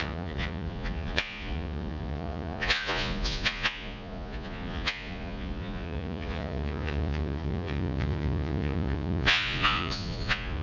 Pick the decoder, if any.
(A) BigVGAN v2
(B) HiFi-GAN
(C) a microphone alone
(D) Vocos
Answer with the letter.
D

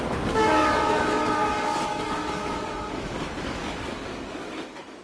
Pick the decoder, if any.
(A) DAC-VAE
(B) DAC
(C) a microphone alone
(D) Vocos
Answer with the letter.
B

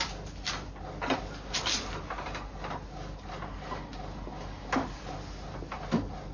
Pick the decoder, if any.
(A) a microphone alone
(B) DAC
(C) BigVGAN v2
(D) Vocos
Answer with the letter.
A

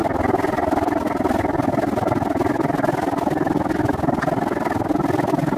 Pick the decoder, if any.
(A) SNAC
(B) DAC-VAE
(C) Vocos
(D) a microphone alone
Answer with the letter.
D